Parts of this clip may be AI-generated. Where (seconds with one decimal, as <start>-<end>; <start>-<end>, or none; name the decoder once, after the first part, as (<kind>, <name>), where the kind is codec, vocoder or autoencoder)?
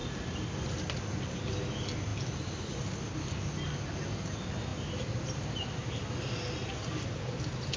none